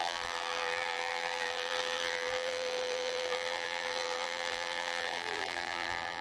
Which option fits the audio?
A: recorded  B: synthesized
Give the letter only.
B